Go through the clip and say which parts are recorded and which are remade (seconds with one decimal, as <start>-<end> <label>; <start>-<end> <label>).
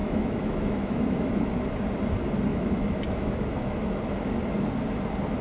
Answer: 0.0-1.5 remade; 1.5-2.5 recorded; 2.5-4.0 remade; 4.0-5.4 recorded